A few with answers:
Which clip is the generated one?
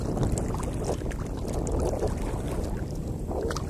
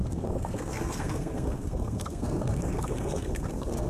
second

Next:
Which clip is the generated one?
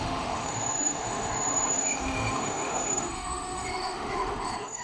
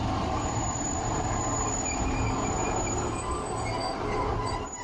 first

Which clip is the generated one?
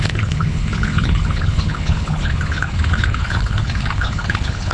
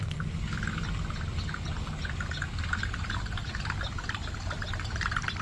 first